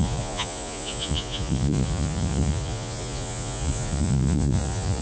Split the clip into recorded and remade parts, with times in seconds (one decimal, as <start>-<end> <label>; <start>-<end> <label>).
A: 0.0-5.0 remade